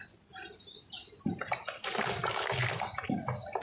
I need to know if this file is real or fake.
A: real